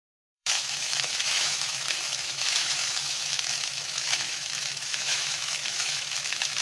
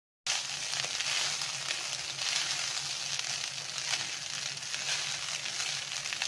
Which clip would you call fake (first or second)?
first